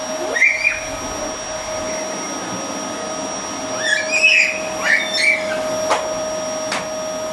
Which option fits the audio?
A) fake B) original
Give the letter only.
B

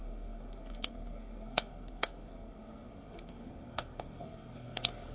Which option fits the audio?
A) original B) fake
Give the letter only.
B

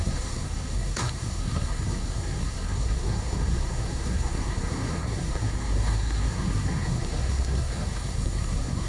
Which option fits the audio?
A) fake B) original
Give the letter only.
A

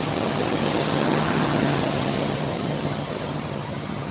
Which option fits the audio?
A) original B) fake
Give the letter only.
B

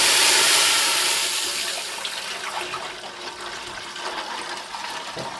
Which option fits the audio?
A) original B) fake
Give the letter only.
A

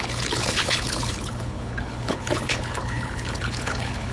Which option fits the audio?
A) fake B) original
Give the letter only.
A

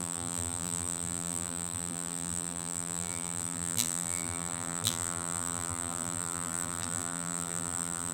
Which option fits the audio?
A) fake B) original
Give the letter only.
A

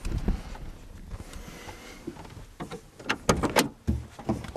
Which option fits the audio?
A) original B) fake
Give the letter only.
A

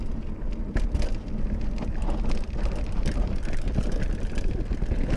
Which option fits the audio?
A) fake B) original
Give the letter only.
B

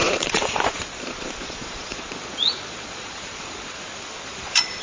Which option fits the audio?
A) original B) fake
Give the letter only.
B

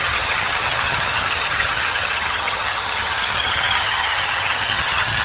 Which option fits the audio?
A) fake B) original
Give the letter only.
A